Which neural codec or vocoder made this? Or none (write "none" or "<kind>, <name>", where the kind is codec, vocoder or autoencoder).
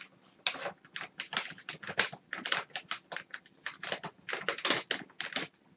none